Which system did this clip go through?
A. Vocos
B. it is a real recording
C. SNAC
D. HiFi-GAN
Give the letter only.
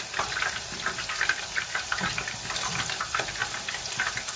B